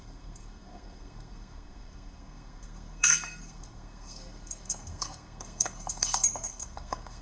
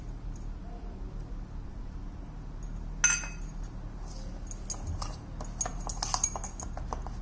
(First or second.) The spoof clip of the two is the first